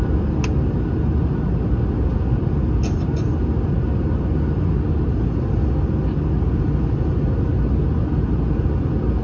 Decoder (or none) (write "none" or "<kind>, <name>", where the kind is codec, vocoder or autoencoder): none